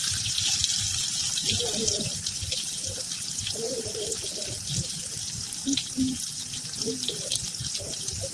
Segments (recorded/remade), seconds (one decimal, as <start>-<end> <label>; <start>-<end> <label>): 0.0-1.0 remade; 1.0-8.3 recorded